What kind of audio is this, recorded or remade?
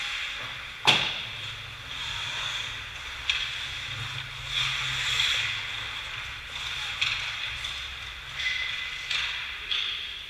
recorded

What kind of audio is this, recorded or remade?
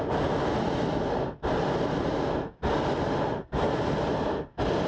recorded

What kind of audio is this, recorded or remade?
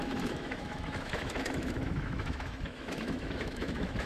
remade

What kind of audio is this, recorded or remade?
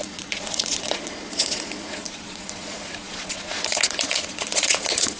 remade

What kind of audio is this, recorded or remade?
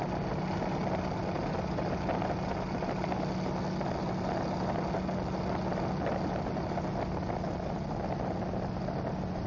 recorded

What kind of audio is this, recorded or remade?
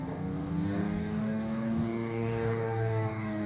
remade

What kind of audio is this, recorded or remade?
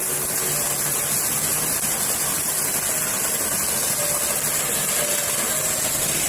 recorded